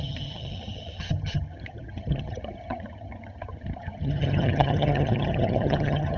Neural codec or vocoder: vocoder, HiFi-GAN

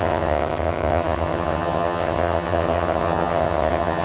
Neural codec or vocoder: vocoder, HiFi-GAN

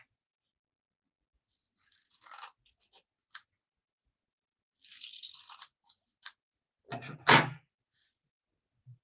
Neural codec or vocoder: none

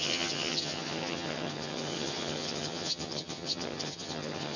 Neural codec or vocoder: vocoder, HiFi-GAN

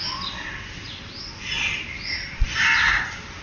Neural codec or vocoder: none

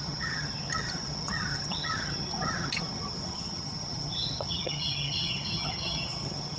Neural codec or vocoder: vocoder, HiFi-GAN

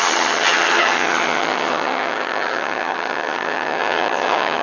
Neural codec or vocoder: vocoder, HiFi-GAN